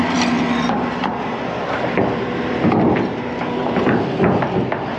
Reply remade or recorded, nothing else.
remade